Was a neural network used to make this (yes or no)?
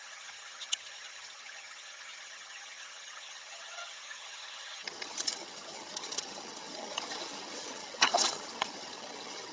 yes